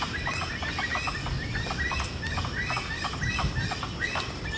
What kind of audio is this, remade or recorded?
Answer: recorded